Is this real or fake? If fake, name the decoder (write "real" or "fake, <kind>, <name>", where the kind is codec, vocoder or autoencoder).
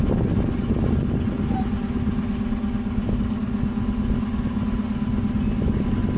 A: real